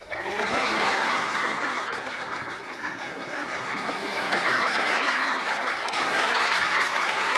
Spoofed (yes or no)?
yes